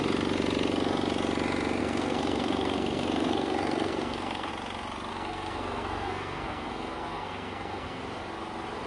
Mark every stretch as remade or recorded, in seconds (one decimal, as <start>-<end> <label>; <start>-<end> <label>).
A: 0.0-1.8 recorded; 1.8-4.5 remade; 4.5-5.1 recorded; 5.1-8.0 remade; 8.0-8.9 recorded

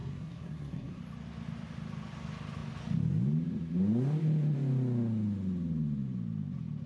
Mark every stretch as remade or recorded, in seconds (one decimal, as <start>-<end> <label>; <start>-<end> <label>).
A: 0.0-1.0 remade; 1.0-6.9 recorded

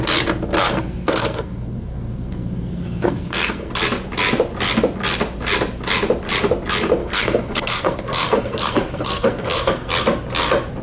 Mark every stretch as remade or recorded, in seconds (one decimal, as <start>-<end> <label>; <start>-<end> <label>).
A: 0.0-0.6 recorded; 0.6-3.7 remade; 3.7-7.0 recorded; 7.0-9.9 remade; 9.9-10.8 recorded

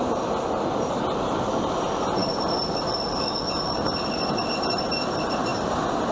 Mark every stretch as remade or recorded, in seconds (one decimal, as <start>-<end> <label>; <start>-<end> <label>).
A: 0.0-6.1 recorded

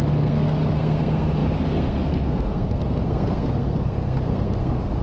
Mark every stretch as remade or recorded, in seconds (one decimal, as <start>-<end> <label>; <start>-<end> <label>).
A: 0.0-5.0 remade

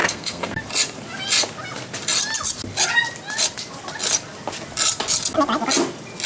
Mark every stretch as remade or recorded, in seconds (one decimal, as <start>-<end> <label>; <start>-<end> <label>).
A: 0.0-0.6 remade; 0.6-6.3 recorded

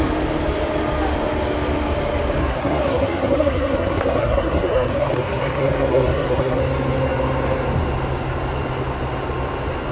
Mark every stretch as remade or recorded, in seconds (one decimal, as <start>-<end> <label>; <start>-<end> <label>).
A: 0.0-2.4 recorded; 2.4-6.6 remade; 6.6-9.9 recorded

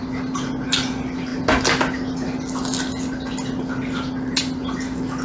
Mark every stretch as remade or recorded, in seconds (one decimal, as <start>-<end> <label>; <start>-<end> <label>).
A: 0.0-5.2 recorded